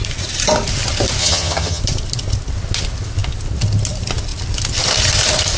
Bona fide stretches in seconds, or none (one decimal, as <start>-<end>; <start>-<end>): 0.0-1.2; 1.8-5.6